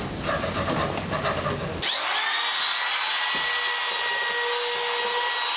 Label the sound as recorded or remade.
recorded